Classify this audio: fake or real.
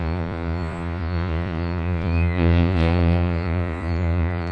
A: fake